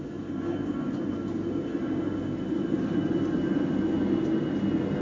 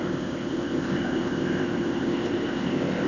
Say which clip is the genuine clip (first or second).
first